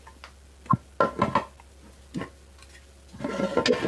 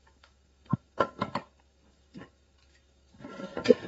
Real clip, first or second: first